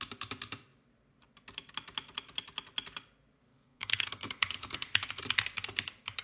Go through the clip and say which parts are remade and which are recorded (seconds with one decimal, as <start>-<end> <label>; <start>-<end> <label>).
0.0-3.5 recorded; 3.5-5.2 remade; 5.2-6.2 recorded